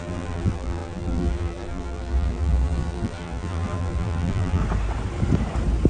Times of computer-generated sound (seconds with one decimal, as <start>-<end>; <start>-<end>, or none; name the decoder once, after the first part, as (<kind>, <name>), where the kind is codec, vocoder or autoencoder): 0.0-4.6 (vocoder, BigVGAN v2)